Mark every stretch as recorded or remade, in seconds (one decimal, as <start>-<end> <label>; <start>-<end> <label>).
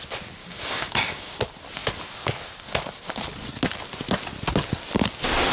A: 0.0-0.4 recorded; 0.4-1.4 remade; 1.4-5.5 recorded